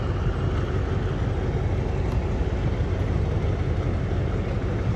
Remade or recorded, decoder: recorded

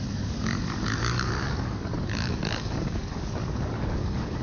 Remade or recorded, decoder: remade, codec, DAC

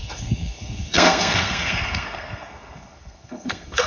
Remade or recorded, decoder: remade, codec, SNAC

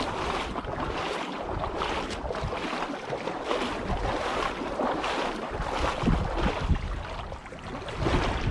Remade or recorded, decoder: recorded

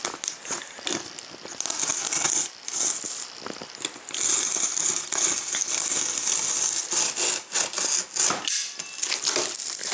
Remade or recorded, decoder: recorded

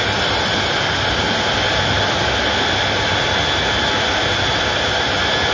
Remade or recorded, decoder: recorded